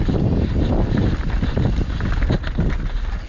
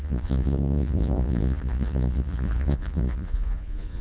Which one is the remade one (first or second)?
second